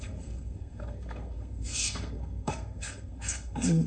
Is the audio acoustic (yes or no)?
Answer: no